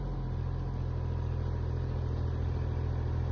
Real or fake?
real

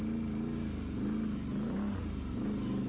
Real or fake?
real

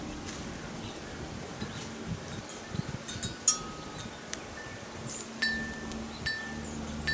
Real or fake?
real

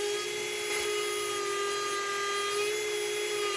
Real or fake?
real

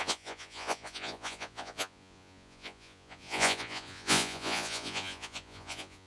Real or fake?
fake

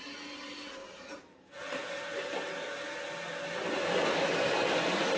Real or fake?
real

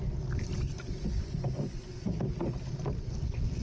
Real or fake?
real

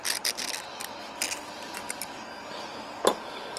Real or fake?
real